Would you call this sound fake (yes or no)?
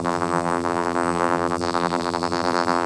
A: yes